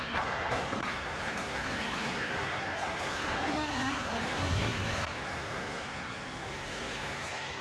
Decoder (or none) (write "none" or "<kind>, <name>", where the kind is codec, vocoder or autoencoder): codec, SNAC